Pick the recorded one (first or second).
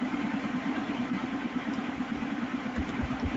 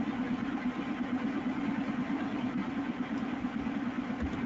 second